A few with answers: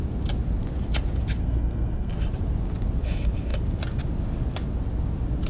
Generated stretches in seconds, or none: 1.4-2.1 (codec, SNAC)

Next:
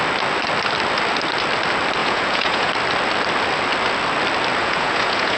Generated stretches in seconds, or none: 2.0-2.7 (vocoder, Vocos); 4.6-5.4